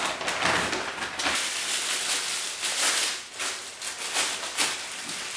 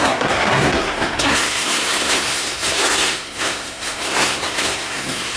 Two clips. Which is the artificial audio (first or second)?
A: second